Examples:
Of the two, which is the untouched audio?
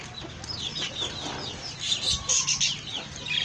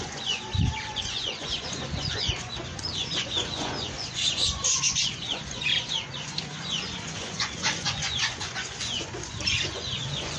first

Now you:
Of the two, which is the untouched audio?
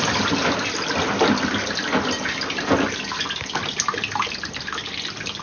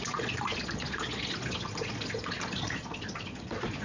first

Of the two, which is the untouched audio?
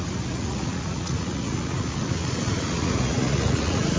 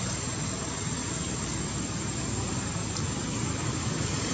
second